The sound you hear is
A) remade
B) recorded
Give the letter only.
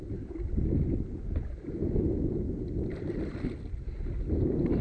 B